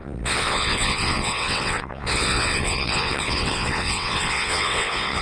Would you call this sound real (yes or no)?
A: no